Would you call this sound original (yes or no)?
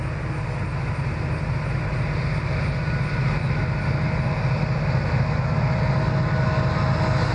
yes